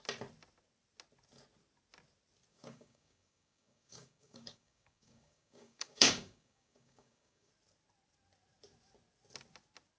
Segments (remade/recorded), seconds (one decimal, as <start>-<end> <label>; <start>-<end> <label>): 0.0-2.5 recorded; 2.5-7.5 remade; 7.5-10.0 recorded